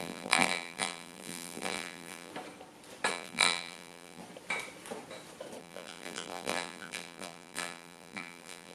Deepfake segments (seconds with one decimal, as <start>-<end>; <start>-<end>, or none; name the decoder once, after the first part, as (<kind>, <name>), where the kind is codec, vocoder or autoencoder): 0.0-2.3 (vocoder, BigVGAN v2); 3.1-4.2; 5.6-8.7